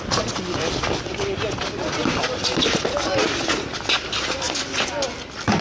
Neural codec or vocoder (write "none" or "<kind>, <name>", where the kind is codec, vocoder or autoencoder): none